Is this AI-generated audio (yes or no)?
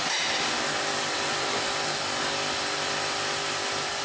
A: no